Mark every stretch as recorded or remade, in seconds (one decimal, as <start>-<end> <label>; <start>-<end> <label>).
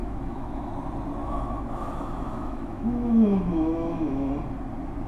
0.0-0.7 remade; 0.7-1.2 recorded; 1.2-4.3 remade; 4.3-5.1 recorded